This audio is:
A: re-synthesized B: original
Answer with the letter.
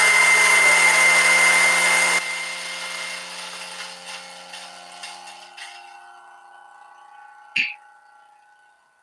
B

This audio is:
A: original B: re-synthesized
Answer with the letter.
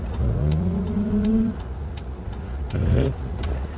B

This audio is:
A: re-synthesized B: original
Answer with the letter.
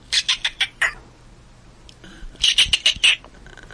B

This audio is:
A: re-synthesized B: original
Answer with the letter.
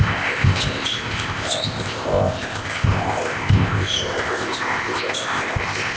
A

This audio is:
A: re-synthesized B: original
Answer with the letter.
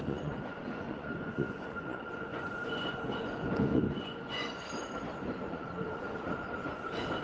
A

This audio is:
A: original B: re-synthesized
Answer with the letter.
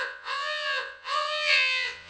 B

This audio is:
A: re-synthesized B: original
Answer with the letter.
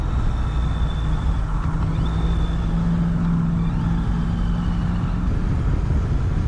B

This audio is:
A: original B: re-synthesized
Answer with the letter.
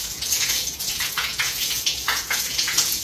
B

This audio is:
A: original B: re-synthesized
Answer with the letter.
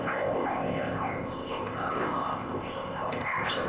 B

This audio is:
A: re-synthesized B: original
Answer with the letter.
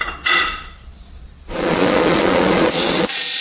A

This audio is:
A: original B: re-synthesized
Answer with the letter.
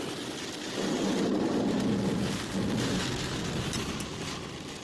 A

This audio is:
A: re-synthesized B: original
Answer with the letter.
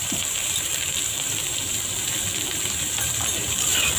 A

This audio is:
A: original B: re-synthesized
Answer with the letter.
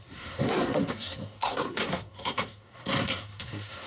B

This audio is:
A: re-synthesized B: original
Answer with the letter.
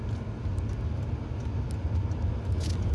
B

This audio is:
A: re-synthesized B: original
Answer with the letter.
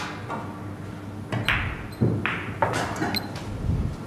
B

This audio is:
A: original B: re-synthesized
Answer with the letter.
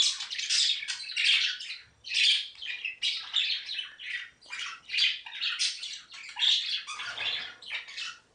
A